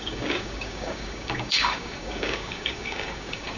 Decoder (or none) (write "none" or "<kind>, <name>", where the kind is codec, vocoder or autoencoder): codec, DAC